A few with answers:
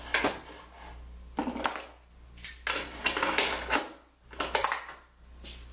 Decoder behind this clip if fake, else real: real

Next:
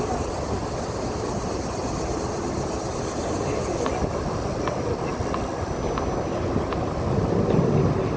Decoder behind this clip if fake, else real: real